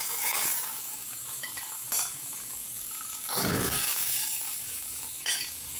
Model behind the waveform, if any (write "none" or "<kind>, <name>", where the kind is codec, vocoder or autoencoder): codec, DAC